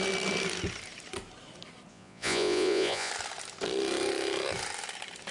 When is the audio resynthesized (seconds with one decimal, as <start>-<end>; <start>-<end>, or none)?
1.9-3.1